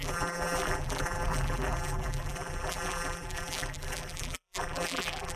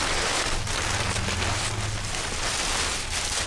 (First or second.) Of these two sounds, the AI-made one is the first